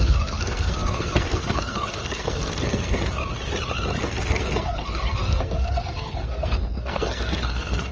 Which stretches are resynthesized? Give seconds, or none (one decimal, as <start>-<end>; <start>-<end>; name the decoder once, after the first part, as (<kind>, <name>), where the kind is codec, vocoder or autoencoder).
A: 0.0-3.2 (codec, SNAC); 4.0-7.9